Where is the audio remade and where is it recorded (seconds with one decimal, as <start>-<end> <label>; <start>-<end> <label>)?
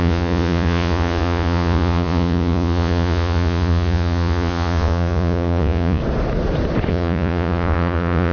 0.0-6.0 remade; 6.0-6.9 recorded; 6.9-8.3 remade